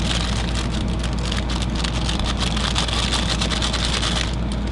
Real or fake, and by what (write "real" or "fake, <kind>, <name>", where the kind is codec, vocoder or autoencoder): real